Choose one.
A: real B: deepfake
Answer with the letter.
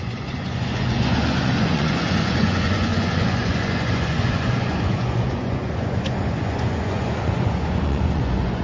B